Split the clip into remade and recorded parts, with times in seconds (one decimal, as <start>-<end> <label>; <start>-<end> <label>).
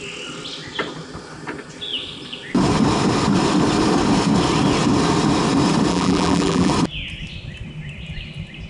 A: 0.0-5.9 recorded; 5.9-6.7 remade; 6.7-8.7 recorded